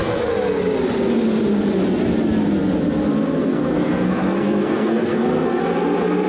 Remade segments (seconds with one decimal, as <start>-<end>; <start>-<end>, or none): 3.4-5.6